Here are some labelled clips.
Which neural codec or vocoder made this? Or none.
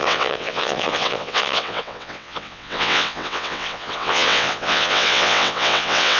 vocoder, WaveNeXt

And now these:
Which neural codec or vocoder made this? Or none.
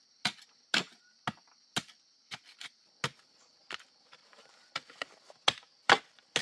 none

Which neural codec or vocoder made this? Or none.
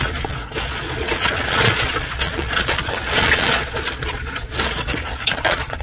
vocoder, Vocos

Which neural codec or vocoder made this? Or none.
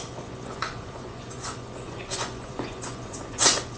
vocoder, Vocos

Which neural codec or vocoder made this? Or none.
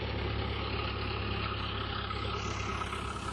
none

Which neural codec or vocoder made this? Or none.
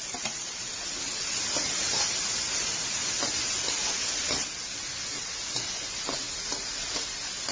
none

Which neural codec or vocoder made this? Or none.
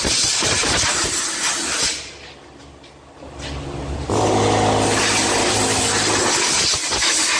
none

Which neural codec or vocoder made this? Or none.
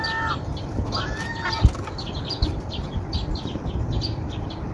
none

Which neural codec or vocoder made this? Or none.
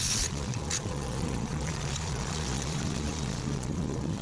vocoder, Vocos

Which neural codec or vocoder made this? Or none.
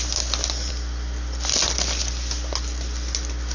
none